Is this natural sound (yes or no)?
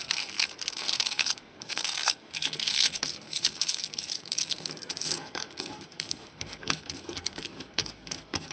no